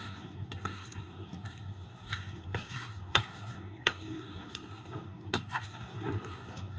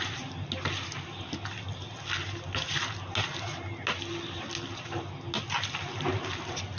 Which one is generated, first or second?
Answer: first